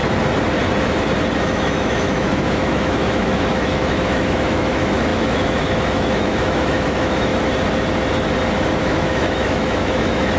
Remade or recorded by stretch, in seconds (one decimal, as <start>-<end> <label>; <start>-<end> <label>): 0.0-1.4 recorded; 1.4-7.3 remade; 7.3-8.8 recorded; 8.8-10.4 remade